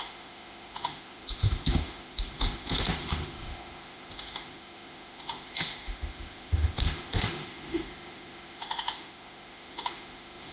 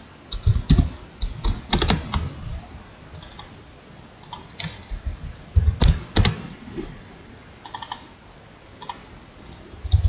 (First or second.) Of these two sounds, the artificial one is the first